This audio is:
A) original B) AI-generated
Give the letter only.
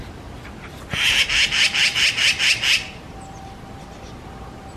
A